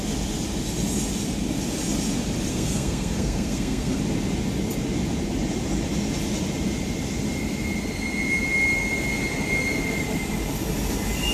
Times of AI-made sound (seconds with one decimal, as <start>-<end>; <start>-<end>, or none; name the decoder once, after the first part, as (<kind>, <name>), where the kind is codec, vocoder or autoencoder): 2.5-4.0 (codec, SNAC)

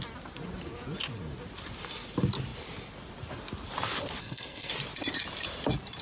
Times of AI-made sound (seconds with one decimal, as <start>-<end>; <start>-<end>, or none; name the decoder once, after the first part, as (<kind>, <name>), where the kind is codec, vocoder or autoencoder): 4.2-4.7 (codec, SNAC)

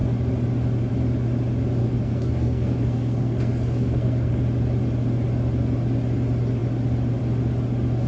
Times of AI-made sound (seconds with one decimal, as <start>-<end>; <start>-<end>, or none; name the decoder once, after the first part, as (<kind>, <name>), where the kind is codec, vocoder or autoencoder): 1.8-4.4 (codec, SNAC)

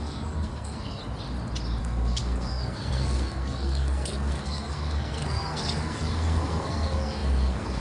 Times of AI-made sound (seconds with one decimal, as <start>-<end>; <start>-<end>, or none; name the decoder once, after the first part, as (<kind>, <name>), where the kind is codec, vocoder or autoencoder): 0.0-1.0 (codec, SNAC); 1.8-7.8

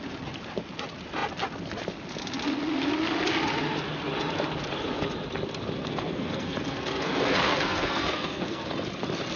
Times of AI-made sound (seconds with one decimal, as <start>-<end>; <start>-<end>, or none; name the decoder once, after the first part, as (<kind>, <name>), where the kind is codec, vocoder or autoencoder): 5.8-8.7 (codec, SNAC)

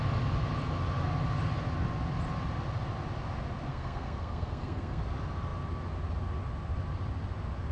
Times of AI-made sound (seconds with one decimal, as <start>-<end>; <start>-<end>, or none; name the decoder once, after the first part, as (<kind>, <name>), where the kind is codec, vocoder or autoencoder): 3.7-5.0 (codec, SNAC)

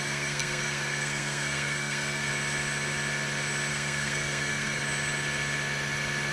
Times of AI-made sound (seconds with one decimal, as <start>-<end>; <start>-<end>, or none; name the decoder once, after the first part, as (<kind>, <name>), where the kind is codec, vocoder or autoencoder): 0.0-2.3 (codec, SNAC); 3.7-4.8